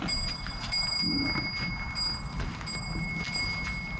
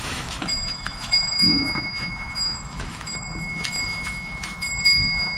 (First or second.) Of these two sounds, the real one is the first